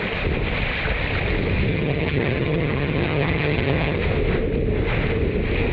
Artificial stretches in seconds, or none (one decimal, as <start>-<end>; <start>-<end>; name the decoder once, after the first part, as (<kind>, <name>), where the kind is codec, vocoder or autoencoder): 1.7-4.0 (vocoder, HiFi-GAN)